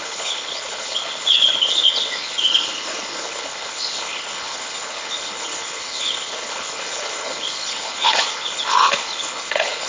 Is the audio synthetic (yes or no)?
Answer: yes